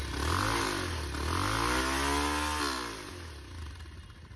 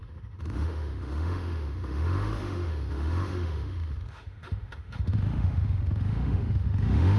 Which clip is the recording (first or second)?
first